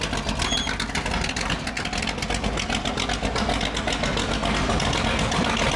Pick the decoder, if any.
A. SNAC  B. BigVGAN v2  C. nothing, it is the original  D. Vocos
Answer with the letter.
C